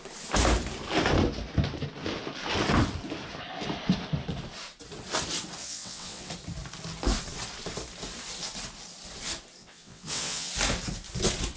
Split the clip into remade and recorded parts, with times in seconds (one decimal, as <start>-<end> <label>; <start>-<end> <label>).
0.0-5.6 recorded; 5.6-6.3 remade; 6.3-9.6 recorded; 9.6-10.5 remade; 10.5-11.6 recorded